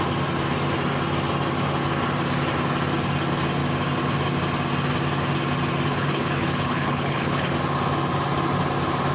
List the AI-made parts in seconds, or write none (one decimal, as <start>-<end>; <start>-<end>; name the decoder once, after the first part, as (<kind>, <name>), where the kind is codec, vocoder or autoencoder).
5.9-7.5 (codec, HILCodec)